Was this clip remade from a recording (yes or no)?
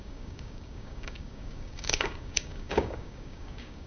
yes